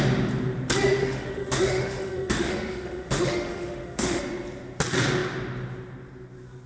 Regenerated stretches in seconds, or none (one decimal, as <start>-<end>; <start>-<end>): 1.0-4.2